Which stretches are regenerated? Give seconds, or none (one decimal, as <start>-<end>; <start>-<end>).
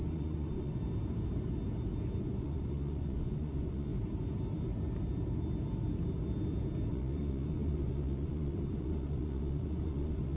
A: 0.0-0.8; 2.2-3.9; 6.9-10.4